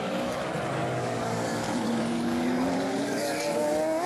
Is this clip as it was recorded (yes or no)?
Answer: no